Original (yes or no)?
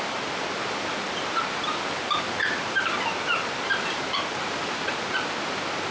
yes